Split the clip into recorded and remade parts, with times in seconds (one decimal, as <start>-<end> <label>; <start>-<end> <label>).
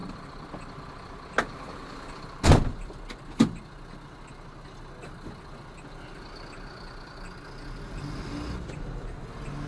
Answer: 0.0-9.7 recorded